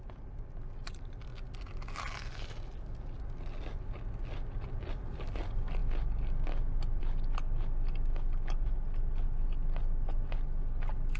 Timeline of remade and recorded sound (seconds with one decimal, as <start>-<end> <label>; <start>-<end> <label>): 0.0-11.2 recorded